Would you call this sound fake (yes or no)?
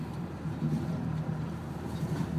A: yes